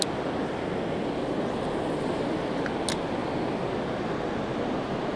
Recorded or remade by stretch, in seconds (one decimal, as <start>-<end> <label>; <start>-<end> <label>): 0.0-5.2 recorded

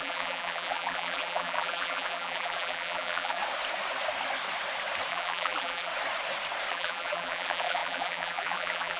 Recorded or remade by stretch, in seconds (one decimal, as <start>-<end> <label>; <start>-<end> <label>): 0.0-3.4 remade; 3.4-5.1 recorded; 5.1-5.9 remade; 5.9-6.7 recorded; 6.7-9.0 remade

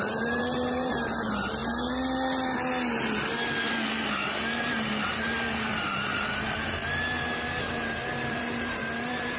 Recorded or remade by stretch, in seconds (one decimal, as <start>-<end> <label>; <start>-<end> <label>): 0.0-1.6 remade; 1.6-4.5 recorded; 4.5-6.8 remade; 6.8-7.6 recorded; 7.6-9.4 remade

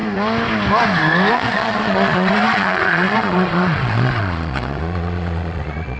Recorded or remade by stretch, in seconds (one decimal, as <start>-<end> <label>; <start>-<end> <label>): 0.0-1.3 recorded; 1.3-6.0 remade